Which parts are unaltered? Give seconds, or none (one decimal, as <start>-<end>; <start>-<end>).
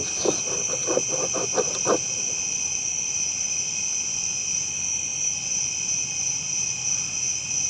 0.0-7.7